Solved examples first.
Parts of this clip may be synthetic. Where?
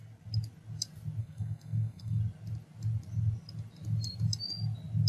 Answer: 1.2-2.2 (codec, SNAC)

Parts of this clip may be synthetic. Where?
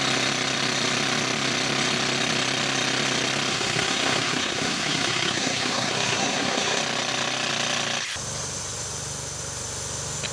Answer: 3.5-6.8 (codec, SNAC)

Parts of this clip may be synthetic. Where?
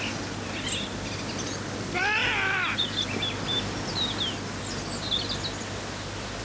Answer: none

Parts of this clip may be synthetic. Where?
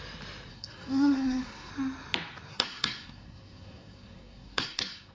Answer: 0.5-1.7 (codec, SNAC); 2.5-5.1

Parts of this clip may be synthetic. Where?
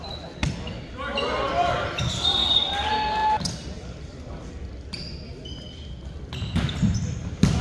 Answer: none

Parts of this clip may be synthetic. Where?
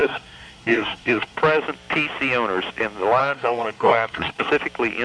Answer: 0.0-1.4 (codec, SNAC); 3.2-4.5